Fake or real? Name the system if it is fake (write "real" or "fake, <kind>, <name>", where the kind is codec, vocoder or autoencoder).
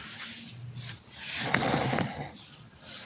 real